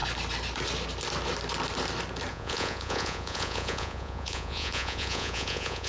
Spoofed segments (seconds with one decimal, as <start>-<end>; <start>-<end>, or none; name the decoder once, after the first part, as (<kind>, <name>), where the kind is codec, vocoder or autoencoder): 2.3-5.9 (vocoder, Vocos)